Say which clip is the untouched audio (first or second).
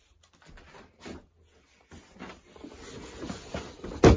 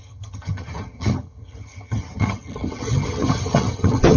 first